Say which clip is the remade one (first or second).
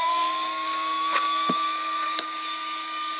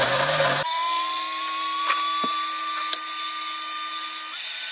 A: first